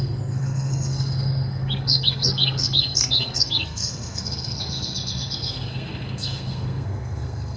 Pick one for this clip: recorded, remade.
remade